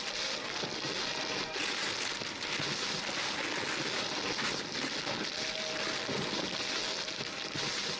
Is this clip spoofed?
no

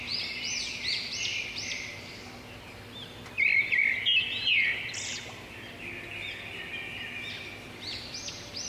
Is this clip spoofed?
no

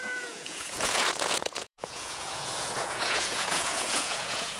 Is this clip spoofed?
yes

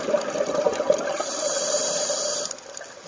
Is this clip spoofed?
yes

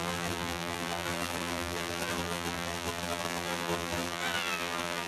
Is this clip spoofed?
yes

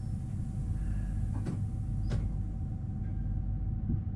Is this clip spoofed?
no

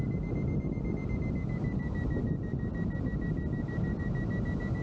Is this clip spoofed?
no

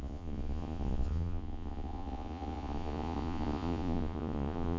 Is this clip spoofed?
yes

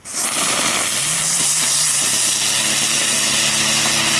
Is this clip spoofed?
no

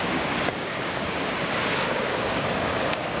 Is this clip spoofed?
yes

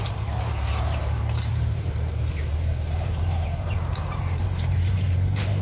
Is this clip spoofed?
yes